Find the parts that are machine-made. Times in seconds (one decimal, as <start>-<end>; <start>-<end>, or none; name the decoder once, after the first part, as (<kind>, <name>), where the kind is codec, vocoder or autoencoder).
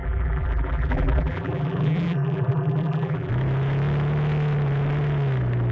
0.0-3.3 (vocoder, BigVGAN v2)